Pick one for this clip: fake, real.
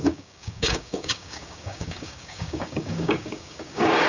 fake